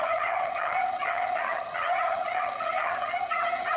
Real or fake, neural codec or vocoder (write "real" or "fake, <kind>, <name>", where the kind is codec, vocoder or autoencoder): fake, vocoder, HiFi-GAN